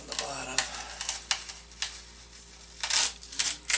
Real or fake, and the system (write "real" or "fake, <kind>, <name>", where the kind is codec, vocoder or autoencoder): real